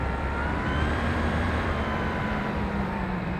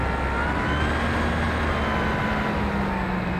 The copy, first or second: first